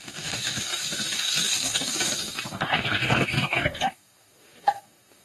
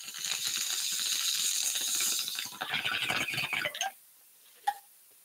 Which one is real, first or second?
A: second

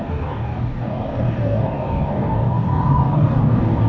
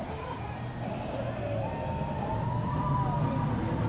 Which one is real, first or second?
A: second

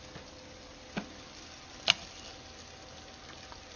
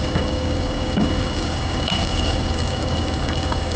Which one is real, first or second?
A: first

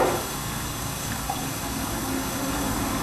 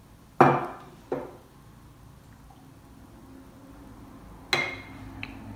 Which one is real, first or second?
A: second